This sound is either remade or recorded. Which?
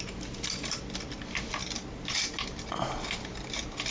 recorded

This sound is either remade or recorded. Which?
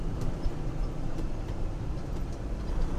remade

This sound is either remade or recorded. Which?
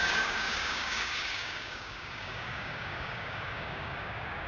remade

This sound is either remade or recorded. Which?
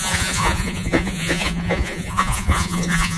remade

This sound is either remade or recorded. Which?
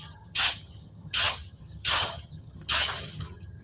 remade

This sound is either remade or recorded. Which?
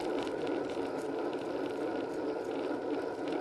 recorded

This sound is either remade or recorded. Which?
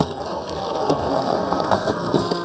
remade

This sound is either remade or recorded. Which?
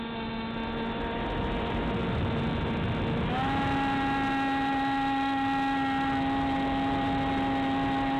recorded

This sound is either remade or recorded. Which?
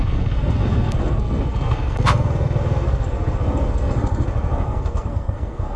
remade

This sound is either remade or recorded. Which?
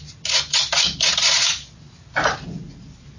recorded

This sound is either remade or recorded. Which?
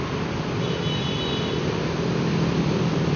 recorded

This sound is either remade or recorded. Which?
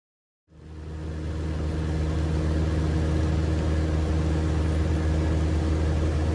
recorded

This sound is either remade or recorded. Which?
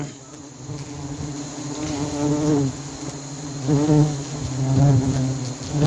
recorded